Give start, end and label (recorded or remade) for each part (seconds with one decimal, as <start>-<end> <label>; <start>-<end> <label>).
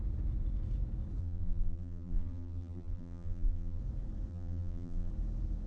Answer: 0.0-1.2 recorded; 1.2-3.8 remade; 3.8-4.3 recorded; 4.3-5.1 remade; 5.1-5.7 recorded